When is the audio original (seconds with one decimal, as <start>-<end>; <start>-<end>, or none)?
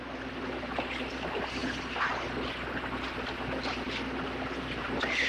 0.0-5.3